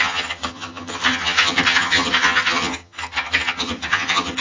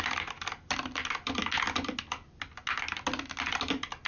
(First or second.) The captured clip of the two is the second